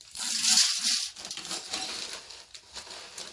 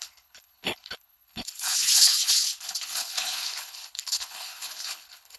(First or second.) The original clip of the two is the first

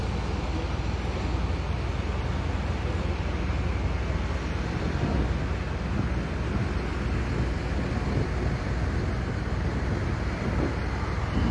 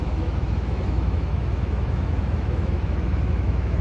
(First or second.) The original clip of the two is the first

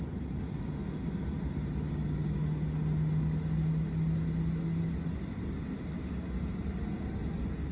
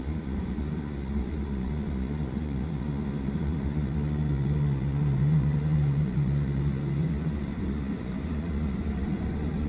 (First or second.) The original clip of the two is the first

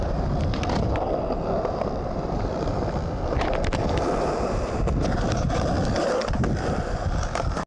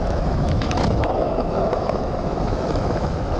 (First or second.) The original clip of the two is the first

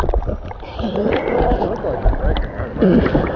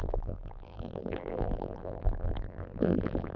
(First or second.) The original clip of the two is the first